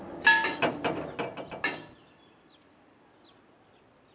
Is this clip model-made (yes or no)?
no